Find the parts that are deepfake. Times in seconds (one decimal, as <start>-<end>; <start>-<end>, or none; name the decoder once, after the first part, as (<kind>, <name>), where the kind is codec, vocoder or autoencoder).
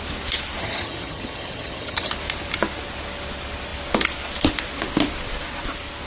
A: 0.6-2.1 (vocoder, HiFi-GAN)